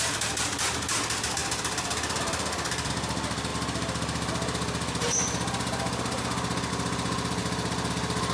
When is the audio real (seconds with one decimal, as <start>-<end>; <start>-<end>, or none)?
0.0-8.3